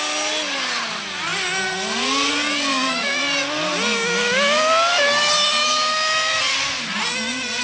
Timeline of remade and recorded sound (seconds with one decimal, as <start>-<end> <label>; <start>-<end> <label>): 0.0-2.7 recorded; 2.7-3.2 remade; 3.2-5.6 recorded; 5.6-6.4 remade; 6.4-7.6 recorded